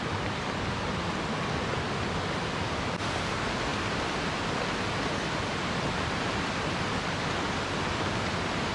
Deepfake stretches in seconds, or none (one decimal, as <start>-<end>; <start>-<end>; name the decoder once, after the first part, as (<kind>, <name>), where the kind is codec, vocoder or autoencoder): none